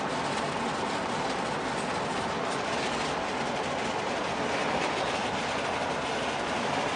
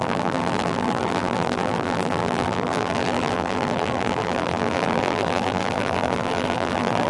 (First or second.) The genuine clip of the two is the first